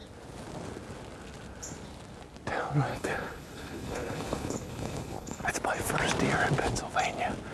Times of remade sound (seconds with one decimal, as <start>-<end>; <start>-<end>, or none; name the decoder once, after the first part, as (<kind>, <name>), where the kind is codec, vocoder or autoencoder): 2.9-5.5 (codec, HILCodec)